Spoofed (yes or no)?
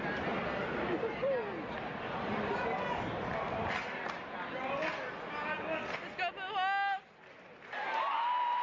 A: no